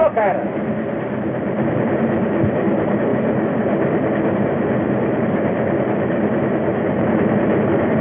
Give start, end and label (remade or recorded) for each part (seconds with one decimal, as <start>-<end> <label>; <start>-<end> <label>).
0.0-1.7 recorded; 1.7-8.0 remade